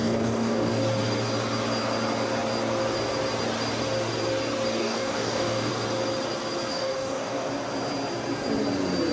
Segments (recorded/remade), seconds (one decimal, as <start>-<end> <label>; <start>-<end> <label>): 0.0-0.7 remade; 0.7-4.8 recorded; 4.8-5.7 remade; 5.7-6.7 recorded; 6.7-7.5 remade; 7.5-9.1 recorded